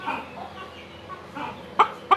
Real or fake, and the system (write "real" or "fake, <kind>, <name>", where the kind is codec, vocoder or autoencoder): real